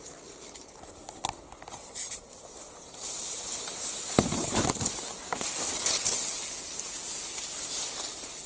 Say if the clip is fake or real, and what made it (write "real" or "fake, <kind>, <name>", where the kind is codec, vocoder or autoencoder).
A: real